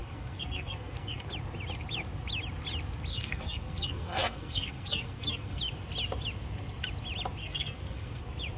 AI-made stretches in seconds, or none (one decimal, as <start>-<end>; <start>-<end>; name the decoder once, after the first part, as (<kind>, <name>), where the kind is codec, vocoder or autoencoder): 0.0-1.3 (codec, SNAC); 3.1-5.6; 7.4-8.2